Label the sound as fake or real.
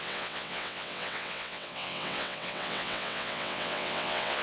fake